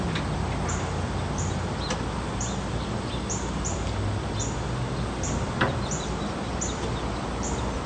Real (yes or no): yes